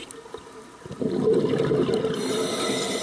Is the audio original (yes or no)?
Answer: yes